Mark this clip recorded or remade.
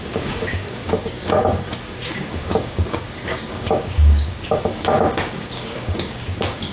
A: remade